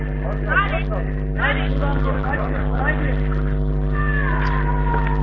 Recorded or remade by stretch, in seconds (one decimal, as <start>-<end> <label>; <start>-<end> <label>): 0.0-1.9 recorded; 1.9-2.8 remade; 2.8-5.2 recorded

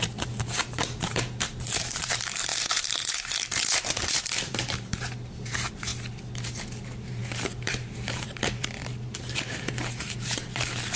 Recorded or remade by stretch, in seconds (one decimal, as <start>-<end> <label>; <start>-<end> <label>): 0.0-5.9 remade; 5.9-6.6 recorded; 6.6-11.0 remade